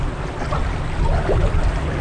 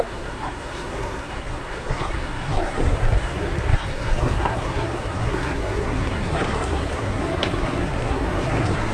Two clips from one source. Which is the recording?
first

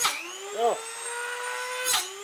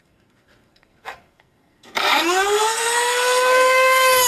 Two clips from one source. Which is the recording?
first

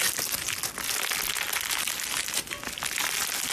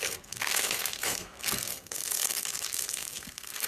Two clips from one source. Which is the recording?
first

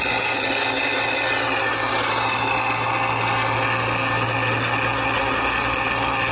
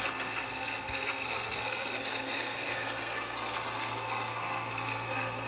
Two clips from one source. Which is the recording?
first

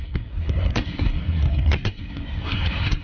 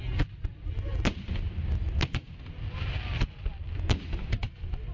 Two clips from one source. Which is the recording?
second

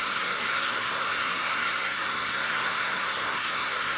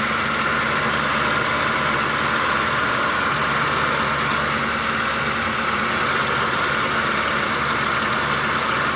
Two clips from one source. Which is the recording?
second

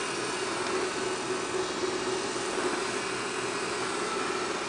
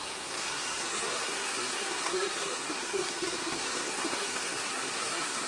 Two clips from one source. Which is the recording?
first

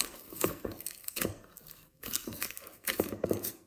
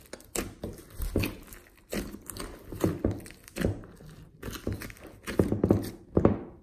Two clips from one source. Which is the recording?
second